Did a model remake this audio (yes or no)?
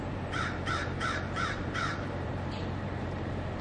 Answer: yes